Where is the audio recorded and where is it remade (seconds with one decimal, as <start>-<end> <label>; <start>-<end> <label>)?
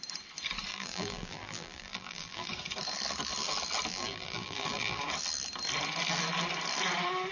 0.0-0.7 recorded; 0.7-2.5 remade; 2.5-3.9 recorded; 3.9-5.0 remade; 5.0-7.3 recorded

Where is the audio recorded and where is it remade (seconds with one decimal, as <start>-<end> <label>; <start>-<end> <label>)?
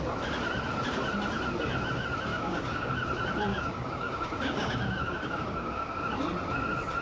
0.0-2.3 recorded; 2.3-2.9 remade; 2.9-3.5 recorded; 3.5-5.9 remade; 5.9-7.0 recorded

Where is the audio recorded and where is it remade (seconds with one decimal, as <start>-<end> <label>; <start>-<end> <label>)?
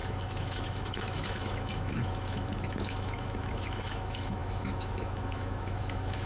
0.0-6.3 remade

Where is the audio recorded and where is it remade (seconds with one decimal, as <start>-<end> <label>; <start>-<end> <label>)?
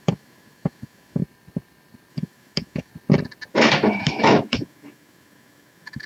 0.0-1.2 remade; 1.2-2.1 recorded; 2.1-2.9 remade; 2.9-3.5 recorded; 3.5-6.1 remade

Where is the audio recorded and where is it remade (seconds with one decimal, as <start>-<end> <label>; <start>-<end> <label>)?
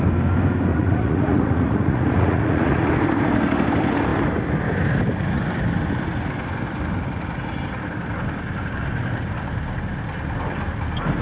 0.0-0.7 recorded; 0.7-2.9 remade; 2.9-11.2 recorded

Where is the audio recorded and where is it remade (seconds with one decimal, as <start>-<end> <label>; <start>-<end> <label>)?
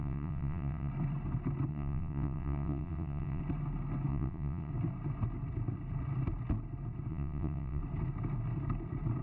0.0-0.9 remade; 0.9-1.7 recorded; 1.7-3.4 remade; 3.4-4.1 recorded; 4.1-4.7 remade; 4.7-7.1 recorded; 7.1-7.8 remade; 7.8-9.2 recorded